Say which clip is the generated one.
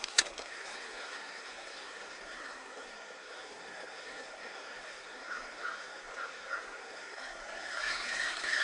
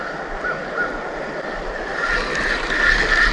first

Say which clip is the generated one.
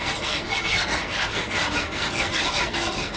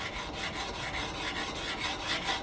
first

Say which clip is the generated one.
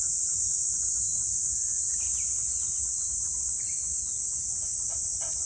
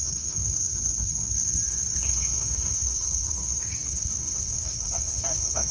second